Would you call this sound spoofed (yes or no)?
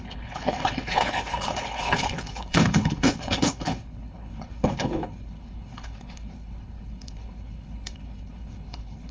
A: yes